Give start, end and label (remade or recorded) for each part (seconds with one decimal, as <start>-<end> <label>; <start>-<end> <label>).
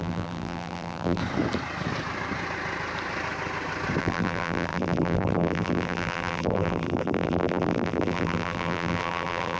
0.0-1.2 remade; 1.2-4.0 recorded; 4.0-9.6 remade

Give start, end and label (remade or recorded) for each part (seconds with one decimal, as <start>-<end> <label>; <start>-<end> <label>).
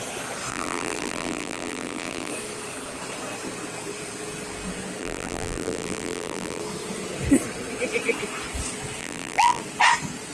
0.0-0.5 recorded; 0.5-2.3 remade; 2.3-5.0 recorded; 5.0-6.6 remade; 6.6-9.0 recorded; 9.0-9.6 remade; 9.6-10.3 recorded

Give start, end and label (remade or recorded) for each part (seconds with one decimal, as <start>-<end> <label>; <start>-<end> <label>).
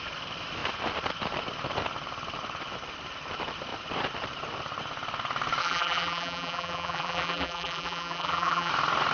0.0-5.6 recorded; 5.6-8.7 remade; 8.7-9.1 recorded